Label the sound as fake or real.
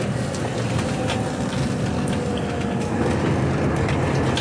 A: real